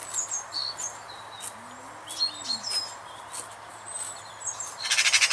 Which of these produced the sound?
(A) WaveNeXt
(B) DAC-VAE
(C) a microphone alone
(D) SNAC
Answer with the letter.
C